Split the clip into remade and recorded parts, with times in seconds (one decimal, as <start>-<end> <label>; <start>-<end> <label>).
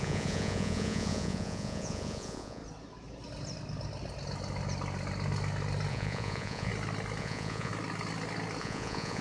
0.0-2.6 remade; 2.6-5.9 recorded; 5.9-6.7 remade; 6.7-7.2 recorded; 7.2-7.7 remade; 7.7-8.6 recorded; 8.6-9.2 remade